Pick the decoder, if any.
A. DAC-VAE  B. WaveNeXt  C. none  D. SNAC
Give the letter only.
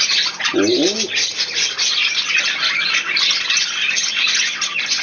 C